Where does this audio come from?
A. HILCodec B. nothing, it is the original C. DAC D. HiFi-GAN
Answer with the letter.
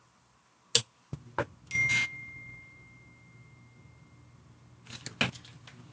B